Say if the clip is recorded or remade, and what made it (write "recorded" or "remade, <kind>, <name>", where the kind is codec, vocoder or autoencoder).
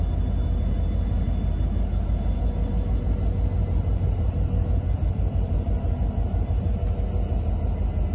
recorded